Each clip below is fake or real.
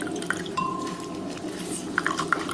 fake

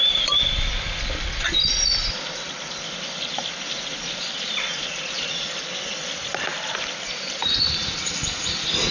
fake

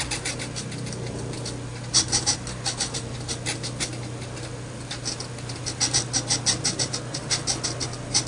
real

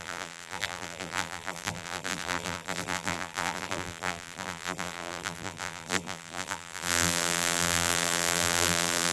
fake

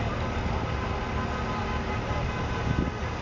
real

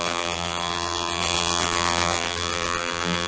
fake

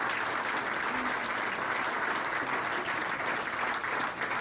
real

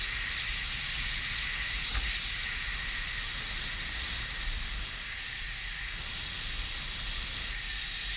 real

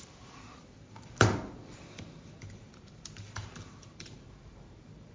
fake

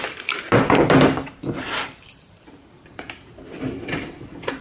fake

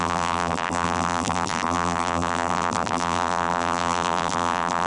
fake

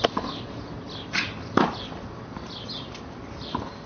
fake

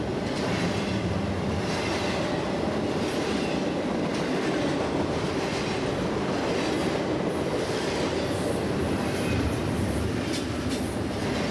real